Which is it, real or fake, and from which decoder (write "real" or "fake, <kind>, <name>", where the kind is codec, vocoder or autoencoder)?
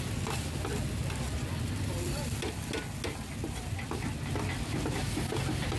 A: real